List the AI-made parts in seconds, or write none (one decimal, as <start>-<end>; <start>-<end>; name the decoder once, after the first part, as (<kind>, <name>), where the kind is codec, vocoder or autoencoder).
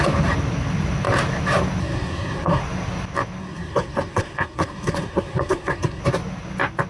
1.8-2.6 (codec, SNAC); 3.4-6.0